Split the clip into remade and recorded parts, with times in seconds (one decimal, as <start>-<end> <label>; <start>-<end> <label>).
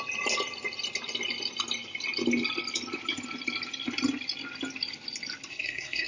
0.0-5.5 recorded; 5.5-6.1 remade